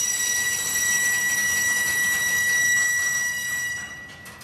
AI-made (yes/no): no